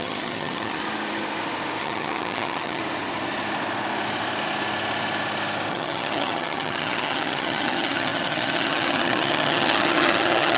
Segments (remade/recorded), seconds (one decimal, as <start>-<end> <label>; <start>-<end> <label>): 0.0-0.8 remade; 0.8-1.8 recorded; 1.8-2.8 remade; 2.8-5.7 recorded; 5.7-10.6 remade

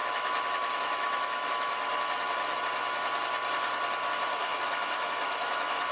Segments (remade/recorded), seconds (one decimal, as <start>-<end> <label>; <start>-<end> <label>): 0.0-2.6 remade; 2.6-4.4 recorded; 4.4-5.9 remade

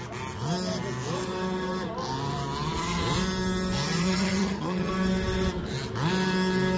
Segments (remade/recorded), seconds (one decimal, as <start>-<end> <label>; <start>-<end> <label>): 0.0-4.0 recorded; 4.0-4.9 remade; 4.9-6.8 recorded

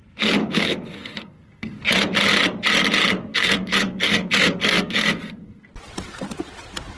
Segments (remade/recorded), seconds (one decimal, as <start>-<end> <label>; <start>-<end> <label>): 0.0-0.4 recorded; 0.4-1.8 remade; 1.8-3.3 recorded; 3.3-5.6 remade; 5.6-7.0 recorded

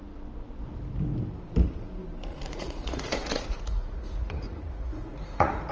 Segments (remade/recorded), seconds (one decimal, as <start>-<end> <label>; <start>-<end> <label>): 0.0-2.3 recorded; 2.3-5.7 remade

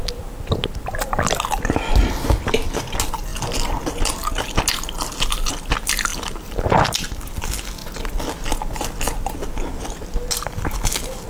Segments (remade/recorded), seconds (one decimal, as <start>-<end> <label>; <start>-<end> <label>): 0.0-6.1 recorded; 6.1-6.7 remade; 6.7-11.3 recorded

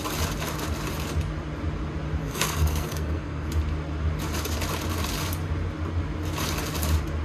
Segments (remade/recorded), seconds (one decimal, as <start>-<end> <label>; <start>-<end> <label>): 0.0-2.2 recorded; 2.2-3.5 remade; 3.5-7.2 recorded